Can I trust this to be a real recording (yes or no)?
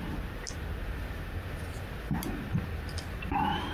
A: yes